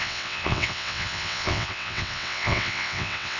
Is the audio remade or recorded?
remade